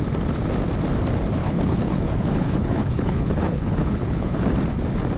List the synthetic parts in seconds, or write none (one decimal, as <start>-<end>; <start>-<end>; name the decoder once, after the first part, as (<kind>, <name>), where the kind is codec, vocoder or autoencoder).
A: 1.4-4.5 (codec, HILCodec)